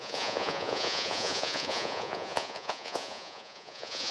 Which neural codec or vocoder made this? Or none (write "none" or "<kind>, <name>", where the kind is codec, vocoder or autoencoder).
vocoder, Vocos